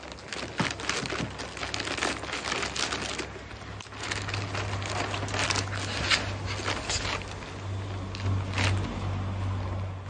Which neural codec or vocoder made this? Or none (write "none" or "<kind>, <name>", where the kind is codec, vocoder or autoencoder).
none